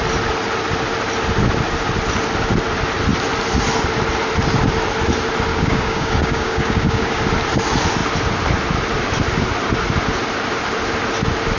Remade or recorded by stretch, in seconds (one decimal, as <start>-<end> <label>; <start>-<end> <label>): 0.0-5.5 recorded; 5.5-7.2 remade; 7.2-11.6 recorded